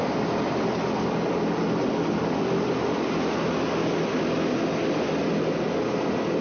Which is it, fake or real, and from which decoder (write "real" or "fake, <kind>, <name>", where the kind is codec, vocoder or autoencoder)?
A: real